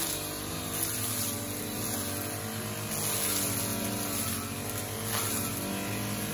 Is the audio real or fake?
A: real